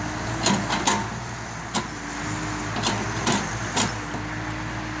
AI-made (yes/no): no